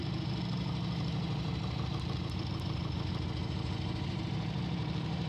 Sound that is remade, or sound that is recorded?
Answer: remade